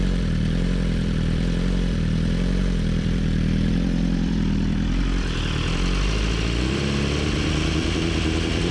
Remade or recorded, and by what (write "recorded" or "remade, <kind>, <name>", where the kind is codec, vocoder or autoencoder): remade, vocoder, BigVGAN v2